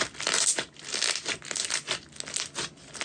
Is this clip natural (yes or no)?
yes